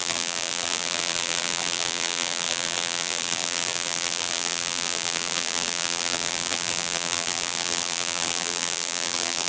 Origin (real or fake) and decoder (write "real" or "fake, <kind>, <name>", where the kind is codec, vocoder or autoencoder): fake, vocoder, BigVGAN v2